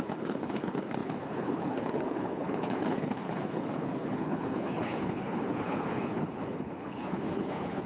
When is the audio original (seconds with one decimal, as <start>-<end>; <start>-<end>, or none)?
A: none